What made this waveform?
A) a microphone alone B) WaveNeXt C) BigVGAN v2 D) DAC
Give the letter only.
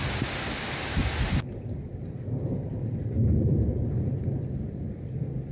A